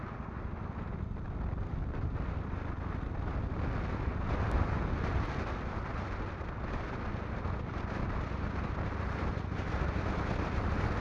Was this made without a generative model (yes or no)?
yes